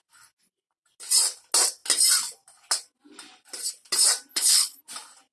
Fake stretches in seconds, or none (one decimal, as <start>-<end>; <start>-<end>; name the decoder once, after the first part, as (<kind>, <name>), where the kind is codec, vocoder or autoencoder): 4.3-4.8 (codec, HILCodec)